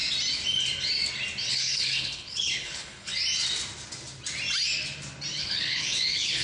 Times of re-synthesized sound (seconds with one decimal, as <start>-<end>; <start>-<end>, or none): 1.5-3.1; 5.4-6.4